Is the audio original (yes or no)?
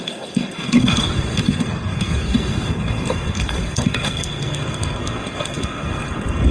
no